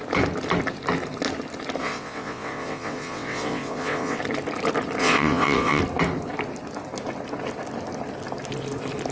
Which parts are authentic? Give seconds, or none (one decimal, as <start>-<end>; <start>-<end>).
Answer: 0.0-1.8; 4.2-5.0; 5.8-9.1